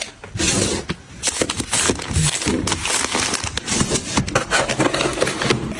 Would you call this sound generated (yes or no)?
no